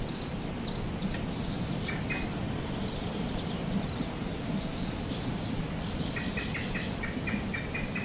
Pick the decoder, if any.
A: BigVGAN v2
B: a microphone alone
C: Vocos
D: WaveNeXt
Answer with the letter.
B